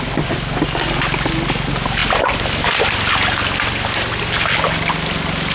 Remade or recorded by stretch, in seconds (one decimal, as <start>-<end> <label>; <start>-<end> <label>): 0.0-5.5 recorded